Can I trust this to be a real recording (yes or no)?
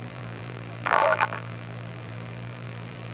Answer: no